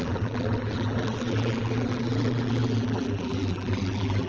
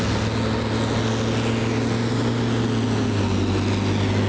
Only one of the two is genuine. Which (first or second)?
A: second